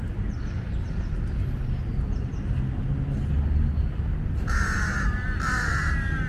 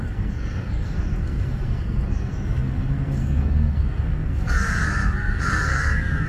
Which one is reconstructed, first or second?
second